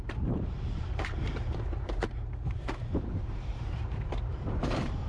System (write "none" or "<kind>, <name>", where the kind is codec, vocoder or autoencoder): vocoder, BigVGAN v2